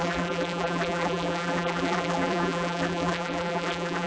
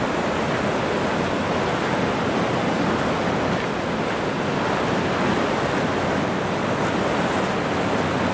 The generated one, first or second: first